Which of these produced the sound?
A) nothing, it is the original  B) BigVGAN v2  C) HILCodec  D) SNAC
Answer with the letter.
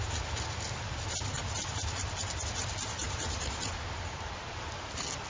A